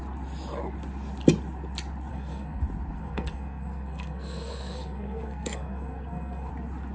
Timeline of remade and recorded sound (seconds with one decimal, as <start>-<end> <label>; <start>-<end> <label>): 0.0-2.1 recorded; 2.1-2.6 remade; 2.6-3.0 recorded; 3.0-6.5 remade; 6.5-6.9 recorded